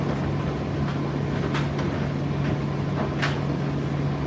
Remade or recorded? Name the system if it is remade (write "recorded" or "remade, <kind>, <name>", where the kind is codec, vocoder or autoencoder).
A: recorded